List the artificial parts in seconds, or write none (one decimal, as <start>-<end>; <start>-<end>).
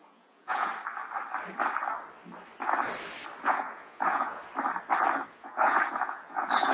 0.0-0.7; 3.4-4.4; 5.3-6.7